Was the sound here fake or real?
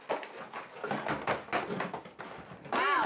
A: real